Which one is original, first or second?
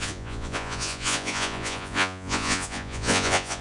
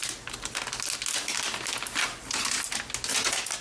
second